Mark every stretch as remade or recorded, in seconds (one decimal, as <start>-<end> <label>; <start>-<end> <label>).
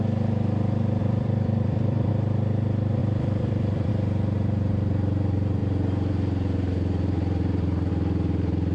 0.0-1.0 recorded; 1.0-2.1 remade; 2.1-3.0 recorded; 3.0-3.9 remade; 3.9-8.7 recorded